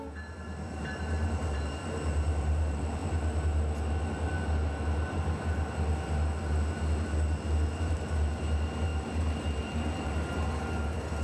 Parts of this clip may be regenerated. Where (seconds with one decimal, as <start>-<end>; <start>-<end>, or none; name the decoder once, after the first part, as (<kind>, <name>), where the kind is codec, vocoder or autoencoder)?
0.0-3.0 (vocoder, BigVGAN v2); 7.8-11.2